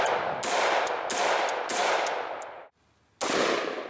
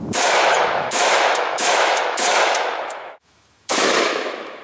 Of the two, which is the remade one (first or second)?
second